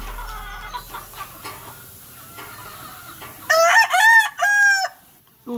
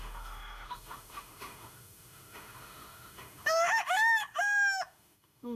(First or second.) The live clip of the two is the first